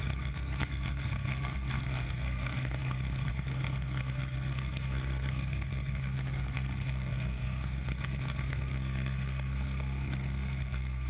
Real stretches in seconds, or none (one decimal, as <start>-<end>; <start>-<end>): none